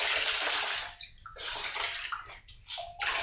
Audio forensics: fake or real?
real